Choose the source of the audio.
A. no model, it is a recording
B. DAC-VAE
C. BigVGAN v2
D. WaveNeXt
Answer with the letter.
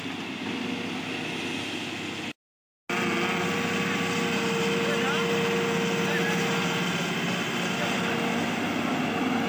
A